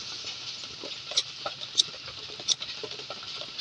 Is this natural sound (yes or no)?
yes